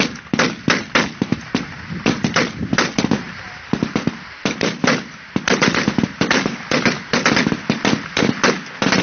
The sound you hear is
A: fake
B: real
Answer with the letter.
B